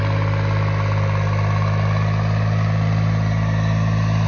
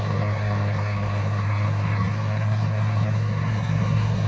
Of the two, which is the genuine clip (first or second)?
first